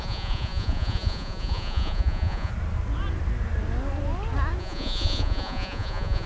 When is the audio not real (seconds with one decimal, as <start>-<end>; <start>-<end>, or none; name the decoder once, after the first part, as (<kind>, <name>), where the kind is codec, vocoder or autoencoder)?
0.0-2.5 (vocoder, Vocos); 4.6-6.3